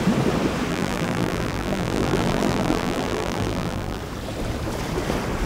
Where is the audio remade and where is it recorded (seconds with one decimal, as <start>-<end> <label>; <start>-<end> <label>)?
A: 0.0-0.7 recorded; 0.7-4.0 remade; 4.0-5.5 recorded